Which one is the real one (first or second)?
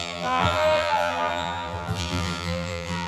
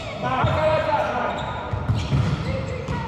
second